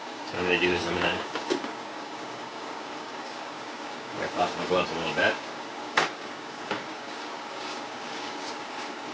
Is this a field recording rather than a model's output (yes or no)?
no